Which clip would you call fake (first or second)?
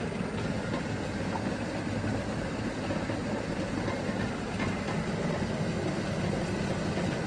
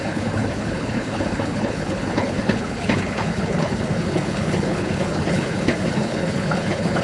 second